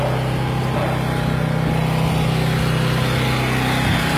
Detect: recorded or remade recorded